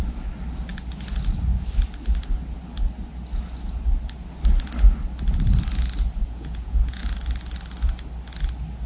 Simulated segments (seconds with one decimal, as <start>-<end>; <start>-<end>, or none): 6.2-7.0